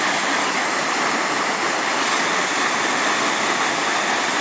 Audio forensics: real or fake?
real